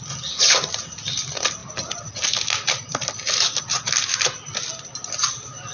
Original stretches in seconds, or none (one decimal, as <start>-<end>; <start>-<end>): 0.0-5.7